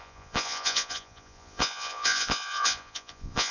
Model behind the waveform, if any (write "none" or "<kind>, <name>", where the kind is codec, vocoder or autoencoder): vocoder, Vocos